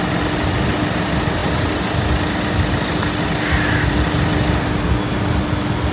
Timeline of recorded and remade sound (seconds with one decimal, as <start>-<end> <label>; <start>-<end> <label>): 0.0-5.9 recorded